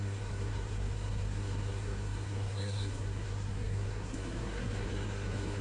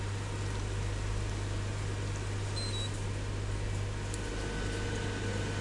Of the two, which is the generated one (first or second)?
first